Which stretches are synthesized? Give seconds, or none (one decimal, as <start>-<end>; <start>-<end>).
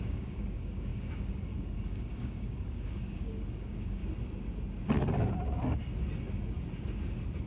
0.0-4.0